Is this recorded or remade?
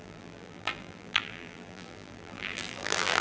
remade